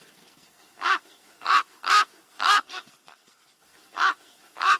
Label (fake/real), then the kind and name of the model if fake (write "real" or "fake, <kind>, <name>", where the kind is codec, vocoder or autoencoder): fake, codec, SNAC